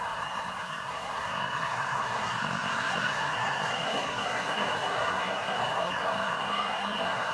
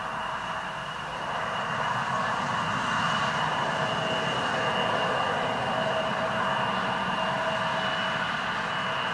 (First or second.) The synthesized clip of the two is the first